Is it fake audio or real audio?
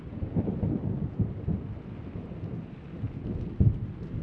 fake